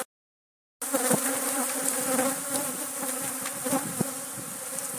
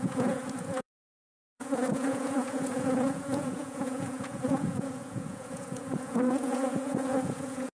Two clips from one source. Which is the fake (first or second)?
second